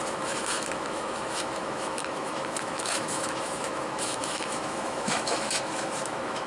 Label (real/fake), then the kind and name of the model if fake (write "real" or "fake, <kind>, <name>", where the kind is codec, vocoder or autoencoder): fake, autoencoder, DAC-VAE